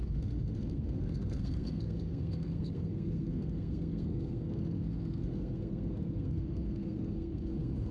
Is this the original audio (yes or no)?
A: no